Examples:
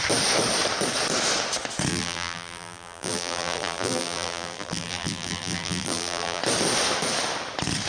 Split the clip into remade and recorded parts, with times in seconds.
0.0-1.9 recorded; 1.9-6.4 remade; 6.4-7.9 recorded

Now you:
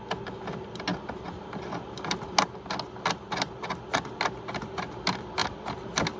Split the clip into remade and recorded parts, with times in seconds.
0.0-6.2 recorded

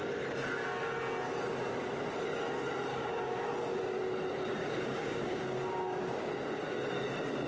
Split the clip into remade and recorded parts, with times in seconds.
0.0-2.9 recorded; 2.9-3.5 remade; 3.5-4.6 recorded; 4.6-6.3 remade; 6.3-7.5 recorded

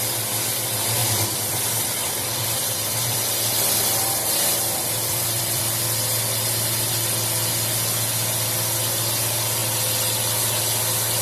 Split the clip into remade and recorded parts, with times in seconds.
0.0-1.0 recorded; 1.0-5.8 remade; 5.8-11.2 recorded

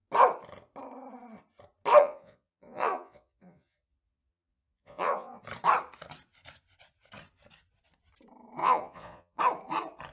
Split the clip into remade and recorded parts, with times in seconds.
0.0-2.0 recorded; 2.0-5.4 remade; 5.4-8.6 recorded; 8.6-9.4 remade; 9.4-10.1 recorded